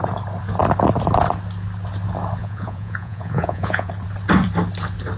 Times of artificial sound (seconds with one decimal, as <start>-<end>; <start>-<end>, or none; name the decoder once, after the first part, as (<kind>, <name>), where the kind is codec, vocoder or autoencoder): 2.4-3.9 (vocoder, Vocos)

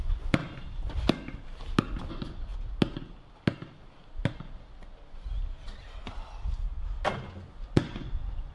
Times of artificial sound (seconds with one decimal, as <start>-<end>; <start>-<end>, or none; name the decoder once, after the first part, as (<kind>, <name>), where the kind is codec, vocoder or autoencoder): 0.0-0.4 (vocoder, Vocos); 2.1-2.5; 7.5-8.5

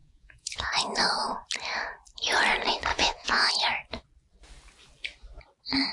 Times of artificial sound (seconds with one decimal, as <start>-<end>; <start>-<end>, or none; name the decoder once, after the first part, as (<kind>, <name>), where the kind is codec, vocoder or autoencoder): 0.0-0.7 (vocoder, Vocos); 2.9-3.5